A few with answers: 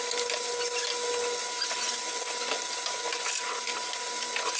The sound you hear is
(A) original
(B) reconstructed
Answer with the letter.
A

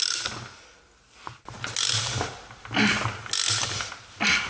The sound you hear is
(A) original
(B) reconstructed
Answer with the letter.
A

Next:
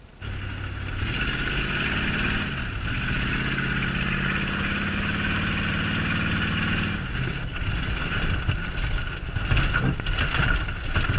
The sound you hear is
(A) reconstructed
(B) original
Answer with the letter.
B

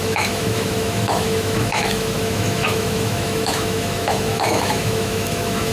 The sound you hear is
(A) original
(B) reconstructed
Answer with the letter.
B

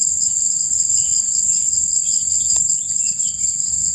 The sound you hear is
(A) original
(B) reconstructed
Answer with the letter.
B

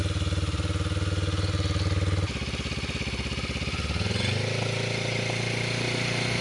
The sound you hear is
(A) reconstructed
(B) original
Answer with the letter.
B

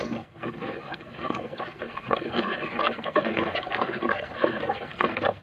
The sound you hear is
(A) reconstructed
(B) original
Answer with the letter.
A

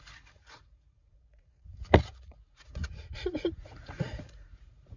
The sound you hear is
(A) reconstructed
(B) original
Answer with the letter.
A